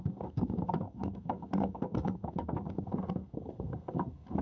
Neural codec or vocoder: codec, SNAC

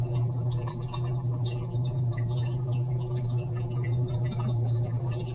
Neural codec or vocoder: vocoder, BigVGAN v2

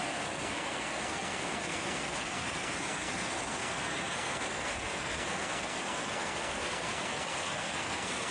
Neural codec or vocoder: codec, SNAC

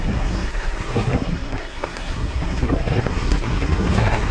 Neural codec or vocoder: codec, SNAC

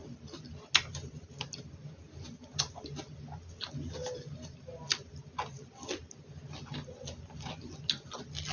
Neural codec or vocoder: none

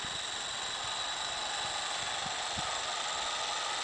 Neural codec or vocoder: none